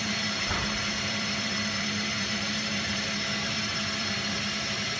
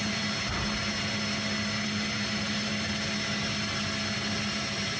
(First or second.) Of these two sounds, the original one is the second